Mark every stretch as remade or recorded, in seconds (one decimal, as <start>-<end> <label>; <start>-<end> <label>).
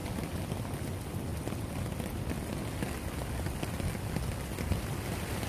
0.0-5.5 recorded